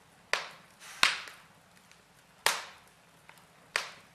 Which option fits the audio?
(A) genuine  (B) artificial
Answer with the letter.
A